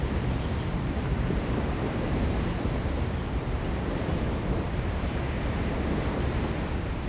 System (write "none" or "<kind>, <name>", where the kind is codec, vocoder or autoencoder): vocoder, BigVGAN v2